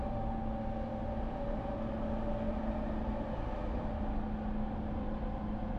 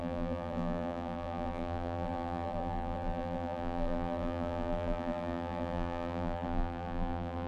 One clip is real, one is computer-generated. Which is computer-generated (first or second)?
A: second